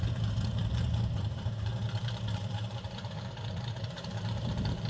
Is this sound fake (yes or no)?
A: yes